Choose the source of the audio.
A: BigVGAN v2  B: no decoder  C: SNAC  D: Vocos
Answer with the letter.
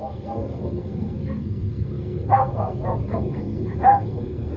C